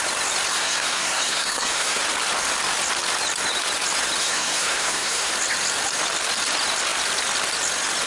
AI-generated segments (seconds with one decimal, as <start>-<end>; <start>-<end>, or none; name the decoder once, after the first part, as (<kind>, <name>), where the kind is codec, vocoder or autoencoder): 0.5-2.0 (codec, SNAC); 4.2-5.3